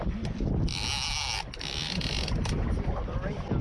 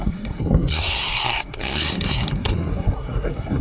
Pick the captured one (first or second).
first